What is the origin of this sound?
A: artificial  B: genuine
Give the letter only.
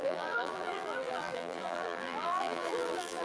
A